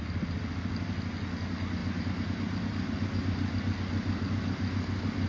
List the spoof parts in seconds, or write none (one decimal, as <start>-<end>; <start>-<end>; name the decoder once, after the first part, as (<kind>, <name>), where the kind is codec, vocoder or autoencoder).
none